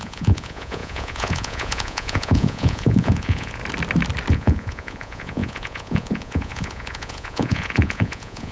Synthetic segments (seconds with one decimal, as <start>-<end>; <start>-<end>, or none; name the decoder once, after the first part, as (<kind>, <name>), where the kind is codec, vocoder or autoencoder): 0.0-3.6 (vocoder, Vocos); 4.3-8.5